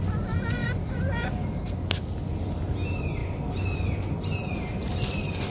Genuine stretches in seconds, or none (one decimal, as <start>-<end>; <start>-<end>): 0.0-5.5